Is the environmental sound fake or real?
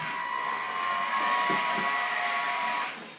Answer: real